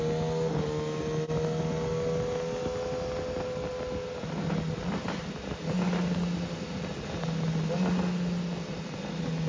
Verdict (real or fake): real